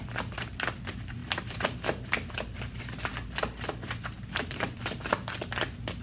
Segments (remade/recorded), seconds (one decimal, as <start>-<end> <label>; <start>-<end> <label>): 0.0-1.2 recorded; 1.2-2.8 remade; 2.8-3.8 recorded; 3.8-5.0 remade; 5.0-6.0 recorded